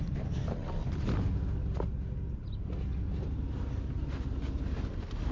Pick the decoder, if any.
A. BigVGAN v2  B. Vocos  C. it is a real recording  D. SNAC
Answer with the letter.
C